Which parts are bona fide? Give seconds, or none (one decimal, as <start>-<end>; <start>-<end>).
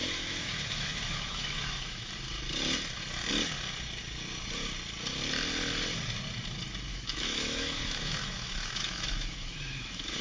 2.1-6.9